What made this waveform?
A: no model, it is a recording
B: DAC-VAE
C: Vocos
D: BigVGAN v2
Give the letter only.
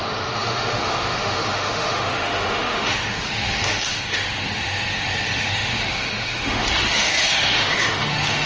B